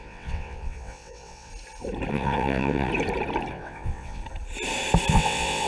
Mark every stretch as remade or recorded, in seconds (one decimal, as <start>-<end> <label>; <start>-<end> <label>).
0.0-1.5 remade; 1.5-2.1 recorded; 2.1-2.9 remade; 2.9-3.5 recorded; 3.5-4.2 remade; 4.2-5.1 recorded; 5.1-5.7 remade